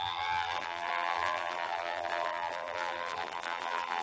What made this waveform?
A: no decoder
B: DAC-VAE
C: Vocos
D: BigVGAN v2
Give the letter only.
D